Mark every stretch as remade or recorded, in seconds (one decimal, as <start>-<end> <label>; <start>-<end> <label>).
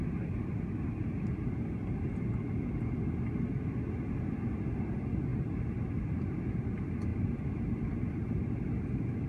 0.0-9.3 recorded